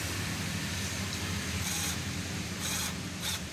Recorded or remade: remade